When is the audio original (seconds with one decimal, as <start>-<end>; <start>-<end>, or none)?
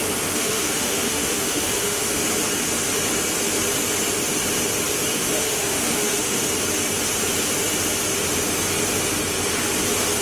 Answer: 0.0-0.4; 2.2-5.1; 6.5-10.2